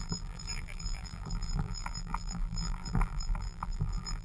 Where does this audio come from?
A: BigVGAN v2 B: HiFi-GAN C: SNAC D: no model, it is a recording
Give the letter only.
A